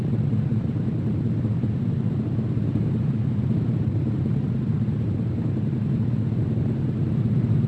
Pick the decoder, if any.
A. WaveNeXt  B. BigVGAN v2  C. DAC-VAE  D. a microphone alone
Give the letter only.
B